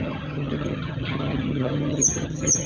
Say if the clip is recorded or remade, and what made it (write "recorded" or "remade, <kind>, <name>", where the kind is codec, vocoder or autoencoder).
remade, vocoder, HiFi-GAN